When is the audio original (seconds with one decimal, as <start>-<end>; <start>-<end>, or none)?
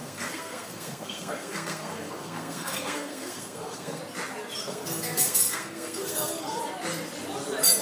4.0-4.6; 6.6-7.8